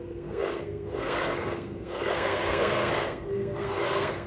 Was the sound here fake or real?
fake